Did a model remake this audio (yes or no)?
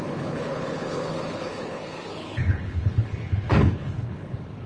yes